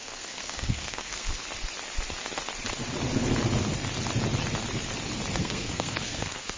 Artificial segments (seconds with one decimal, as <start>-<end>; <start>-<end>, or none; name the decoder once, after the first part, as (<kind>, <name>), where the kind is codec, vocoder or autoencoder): 0.0-1.4 (codec, SNAC); 5.4-6.6